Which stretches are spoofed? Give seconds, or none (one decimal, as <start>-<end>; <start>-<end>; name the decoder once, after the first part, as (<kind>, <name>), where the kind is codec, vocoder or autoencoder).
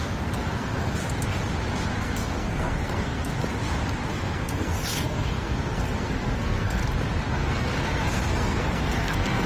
0.0-1.0 (codec, SNAC); 2.0-3.3; 4.1-6.8; 7.3-9.5